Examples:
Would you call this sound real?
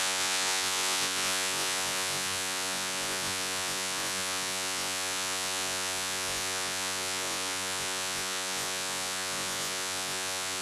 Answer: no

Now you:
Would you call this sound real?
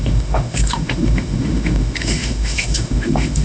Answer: no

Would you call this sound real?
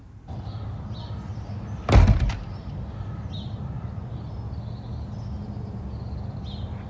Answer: yes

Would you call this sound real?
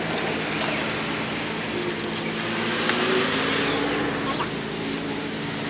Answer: yes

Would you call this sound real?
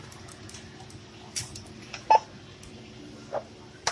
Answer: yes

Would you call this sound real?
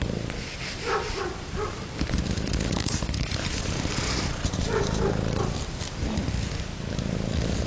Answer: no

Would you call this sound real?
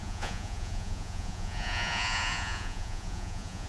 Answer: no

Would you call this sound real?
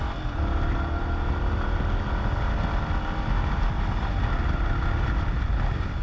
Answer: yes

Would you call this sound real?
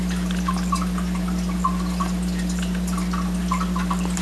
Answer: yes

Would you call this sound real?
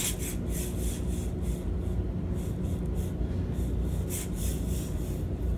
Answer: yes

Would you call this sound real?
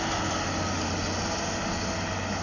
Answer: yes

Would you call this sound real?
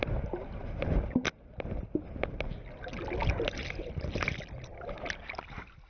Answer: yes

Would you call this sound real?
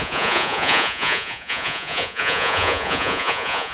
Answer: no